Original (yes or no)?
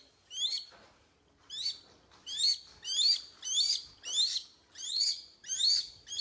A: yes